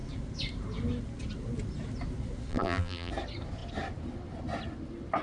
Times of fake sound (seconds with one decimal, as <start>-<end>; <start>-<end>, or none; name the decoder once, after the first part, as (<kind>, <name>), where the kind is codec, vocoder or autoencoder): 2.5-3.1 (vocoder, BigVGAN v2)